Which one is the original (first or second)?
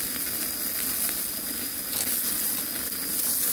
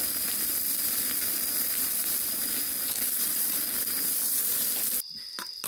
first